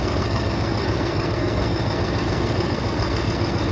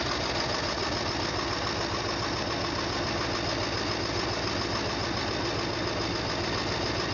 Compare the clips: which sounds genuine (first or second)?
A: second